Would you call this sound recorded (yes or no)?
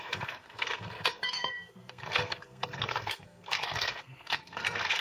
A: no